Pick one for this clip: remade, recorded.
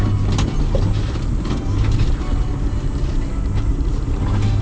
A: recorded